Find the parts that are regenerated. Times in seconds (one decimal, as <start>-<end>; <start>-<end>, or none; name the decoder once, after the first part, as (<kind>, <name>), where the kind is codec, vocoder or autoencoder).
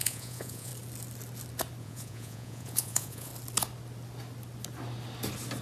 0.0-0.7 (vocoder, Vocos); 1.8-3.3